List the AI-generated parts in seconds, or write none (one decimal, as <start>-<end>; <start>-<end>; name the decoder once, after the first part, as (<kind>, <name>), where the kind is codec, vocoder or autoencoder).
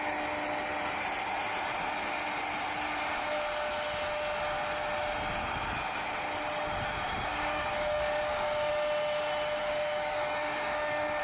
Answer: 7.0-8.7 (codec, DAC); 9.6-11.2